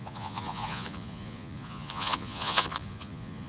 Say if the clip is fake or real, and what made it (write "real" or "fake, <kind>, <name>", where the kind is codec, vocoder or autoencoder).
fake, vocoder, Vocos